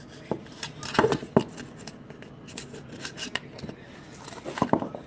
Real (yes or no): yes